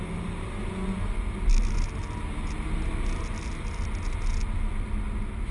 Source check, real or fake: real